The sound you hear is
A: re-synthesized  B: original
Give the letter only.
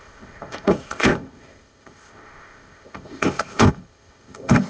A